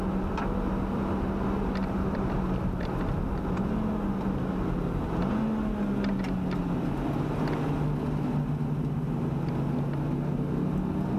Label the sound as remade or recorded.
recorded